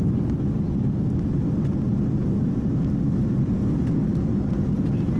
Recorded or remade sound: recorded